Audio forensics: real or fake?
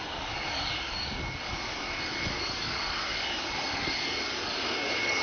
fake